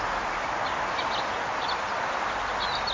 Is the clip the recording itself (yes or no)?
yes